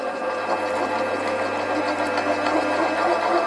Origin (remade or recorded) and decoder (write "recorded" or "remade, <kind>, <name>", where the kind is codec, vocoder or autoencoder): recorded